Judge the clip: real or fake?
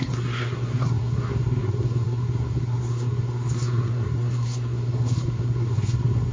fake